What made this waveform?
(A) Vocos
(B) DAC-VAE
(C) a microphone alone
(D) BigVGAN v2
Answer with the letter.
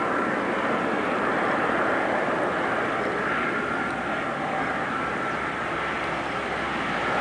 C